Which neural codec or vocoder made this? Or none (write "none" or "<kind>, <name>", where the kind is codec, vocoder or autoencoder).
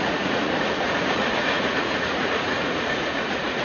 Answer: vocoder, Vocos